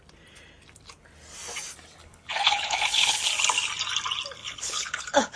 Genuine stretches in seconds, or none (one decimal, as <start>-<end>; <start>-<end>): 0.0-2.0; 3.3-4.4